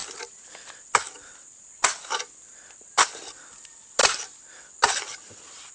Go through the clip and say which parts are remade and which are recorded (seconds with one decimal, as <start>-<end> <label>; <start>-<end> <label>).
0.0-5.7 recorded